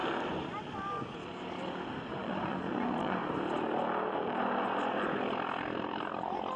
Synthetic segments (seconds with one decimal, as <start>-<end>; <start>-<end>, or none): 2.1-3.2